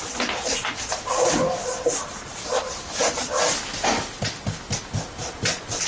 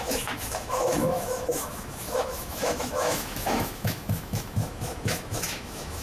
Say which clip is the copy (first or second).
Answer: second